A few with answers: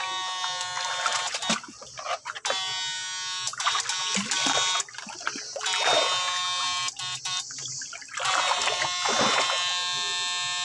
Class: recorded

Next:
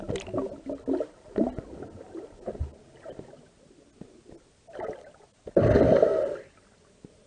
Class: recorded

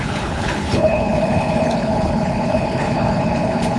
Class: remade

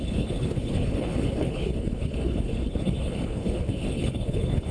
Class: remade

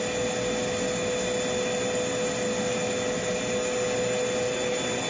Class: recorded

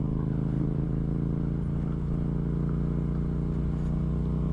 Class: recorded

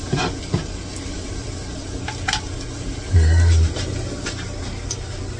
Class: recorded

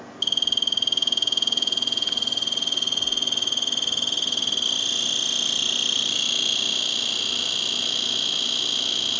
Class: recorded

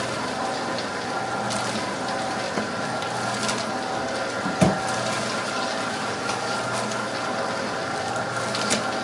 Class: recorded